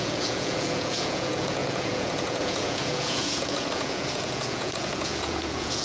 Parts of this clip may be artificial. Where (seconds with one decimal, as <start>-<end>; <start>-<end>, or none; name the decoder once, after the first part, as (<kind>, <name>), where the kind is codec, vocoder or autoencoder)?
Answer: 0.0-5.8 (vocoder, Vocos)